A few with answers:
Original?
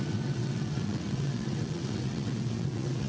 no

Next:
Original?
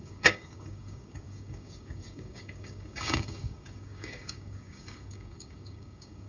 no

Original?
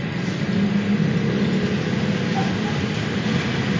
yes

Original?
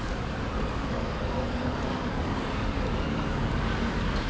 no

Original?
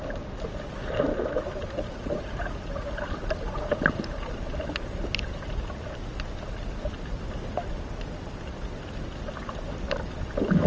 yes